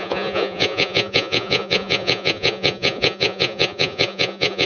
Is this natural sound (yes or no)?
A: no